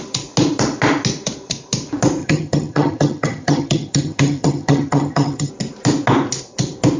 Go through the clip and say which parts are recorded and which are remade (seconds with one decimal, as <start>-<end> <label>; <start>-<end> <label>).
0.0-2.2 recorded; 2.2-5.5 remade; 5.5-7.0 recorded